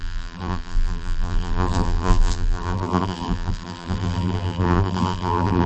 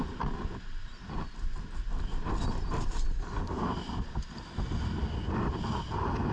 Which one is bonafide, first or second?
second